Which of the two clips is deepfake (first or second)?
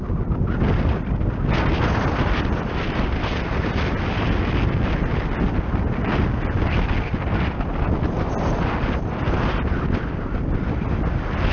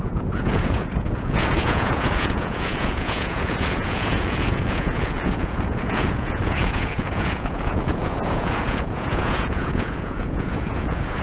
second